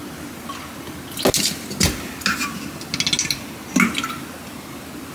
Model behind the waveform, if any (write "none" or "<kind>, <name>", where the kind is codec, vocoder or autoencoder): none